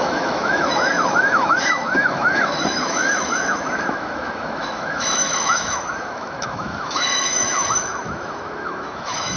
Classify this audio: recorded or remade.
remade